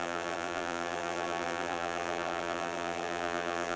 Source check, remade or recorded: remade